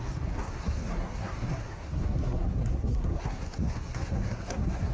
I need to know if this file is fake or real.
fake